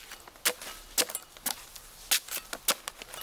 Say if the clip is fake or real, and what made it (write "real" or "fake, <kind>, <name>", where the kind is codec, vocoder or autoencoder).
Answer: real